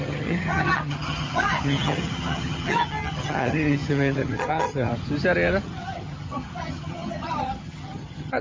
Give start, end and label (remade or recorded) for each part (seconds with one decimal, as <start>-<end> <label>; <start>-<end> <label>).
0.0-4.9 remade; 4.9-5.6 recorded; 5.6-8.4 remade